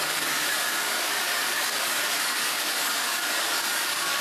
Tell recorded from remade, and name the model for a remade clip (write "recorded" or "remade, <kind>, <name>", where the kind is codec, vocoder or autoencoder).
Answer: remade, codec, DAC